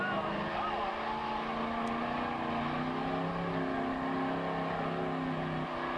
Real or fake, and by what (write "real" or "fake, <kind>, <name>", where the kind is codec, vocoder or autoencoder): real